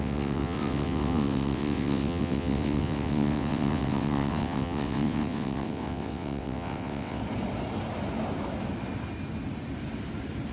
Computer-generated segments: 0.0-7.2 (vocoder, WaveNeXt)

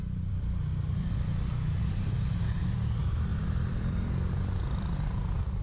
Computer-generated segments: 0.0-5.6 (vocoder, BigVGAN v2)

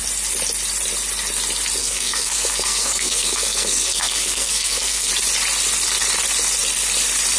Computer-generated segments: 1.8-5.1 (codec, SNAC)

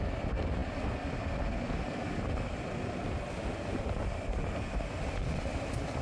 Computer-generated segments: none